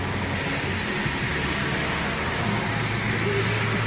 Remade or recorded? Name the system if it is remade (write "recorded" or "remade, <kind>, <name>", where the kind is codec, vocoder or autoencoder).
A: recorded